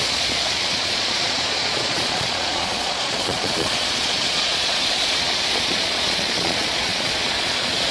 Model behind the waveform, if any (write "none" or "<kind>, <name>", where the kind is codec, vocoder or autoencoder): vocoder, Vocos